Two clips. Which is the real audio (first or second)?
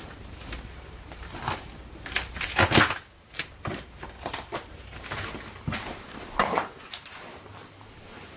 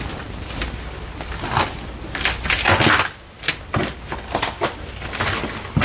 second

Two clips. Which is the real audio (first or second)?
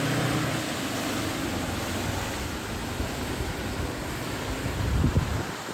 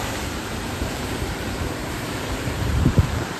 first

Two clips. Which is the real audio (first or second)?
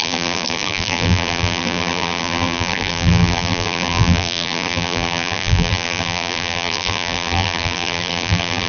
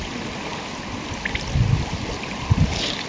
second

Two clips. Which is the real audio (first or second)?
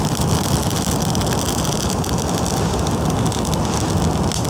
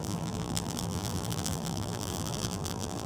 first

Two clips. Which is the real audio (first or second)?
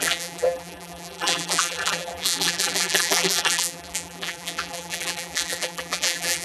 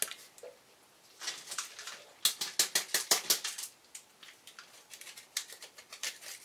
second